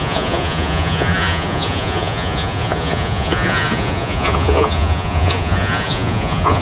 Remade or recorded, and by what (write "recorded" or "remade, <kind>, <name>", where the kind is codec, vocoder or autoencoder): remade, vocoder, Vocos